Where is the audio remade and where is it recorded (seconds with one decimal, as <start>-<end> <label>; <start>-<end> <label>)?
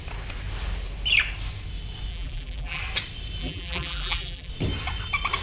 0.0-2.1 recorded; 2.1-2.8 remade; 2.8-3.4 recorded; 3.4-4.5 remade; 4.5-5.4 recorded